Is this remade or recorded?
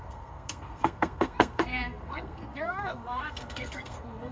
remade